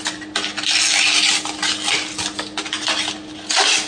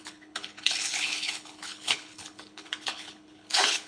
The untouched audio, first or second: first